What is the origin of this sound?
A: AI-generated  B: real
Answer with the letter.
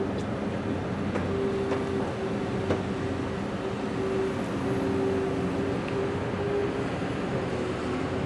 B